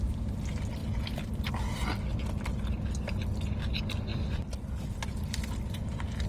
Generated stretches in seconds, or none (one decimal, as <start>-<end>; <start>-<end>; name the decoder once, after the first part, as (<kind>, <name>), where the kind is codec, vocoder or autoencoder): none